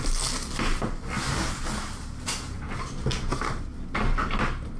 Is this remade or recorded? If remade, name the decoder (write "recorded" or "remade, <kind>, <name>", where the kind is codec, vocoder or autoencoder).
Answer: recorded